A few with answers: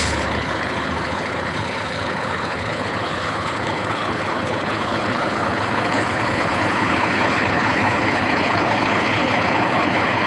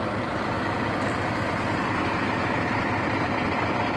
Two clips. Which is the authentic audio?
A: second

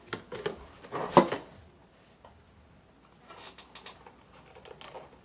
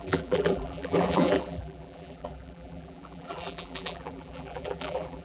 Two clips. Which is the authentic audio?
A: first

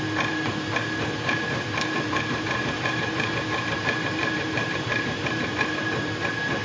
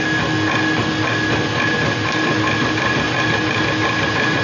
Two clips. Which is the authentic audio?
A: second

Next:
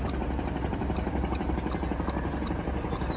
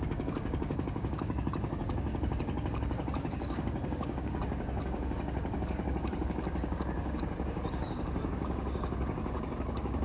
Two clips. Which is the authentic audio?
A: first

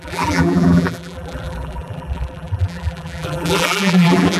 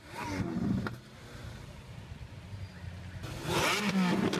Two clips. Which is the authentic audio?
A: second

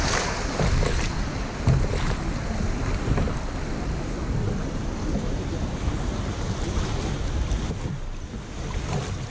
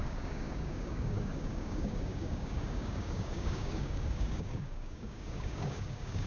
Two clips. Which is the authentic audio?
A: first